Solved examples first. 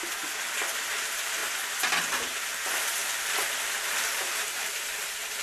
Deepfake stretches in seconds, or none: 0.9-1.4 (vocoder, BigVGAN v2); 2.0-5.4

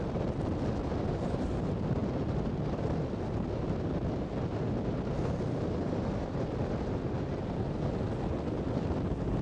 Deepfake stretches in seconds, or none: none

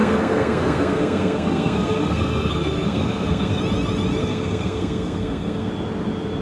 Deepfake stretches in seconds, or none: 0.0-3.6 (codec, SNAC); 4.2-5.7

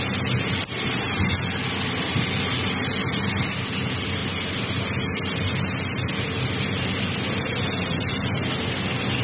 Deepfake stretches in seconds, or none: none